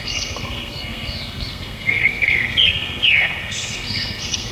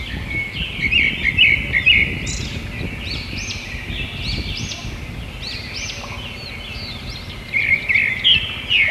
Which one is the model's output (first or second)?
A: first